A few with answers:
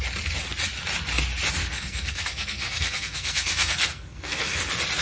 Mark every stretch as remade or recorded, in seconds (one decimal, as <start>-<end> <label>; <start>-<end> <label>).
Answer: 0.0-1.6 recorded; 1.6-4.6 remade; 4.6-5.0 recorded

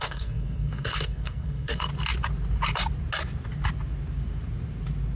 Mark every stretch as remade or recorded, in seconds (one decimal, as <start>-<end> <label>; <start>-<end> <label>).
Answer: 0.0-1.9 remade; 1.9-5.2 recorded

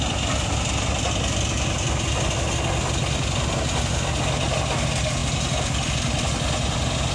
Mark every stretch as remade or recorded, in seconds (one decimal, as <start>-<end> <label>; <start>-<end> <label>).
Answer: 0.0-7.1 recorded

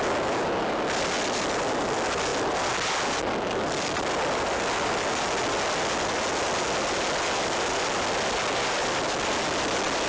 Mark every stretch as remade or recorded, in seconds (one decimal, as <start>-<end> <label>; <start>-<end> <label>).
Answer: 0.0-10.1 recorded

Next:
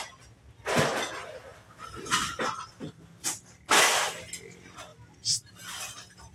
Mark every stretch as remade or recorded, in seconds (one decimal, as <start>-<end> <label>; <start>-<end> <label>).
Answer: 0.0-6.3 recorded

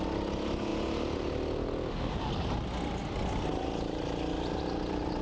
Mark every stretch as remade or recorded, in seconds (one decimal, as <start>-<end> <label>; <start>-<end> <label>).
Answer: 0.0-5.2 recorded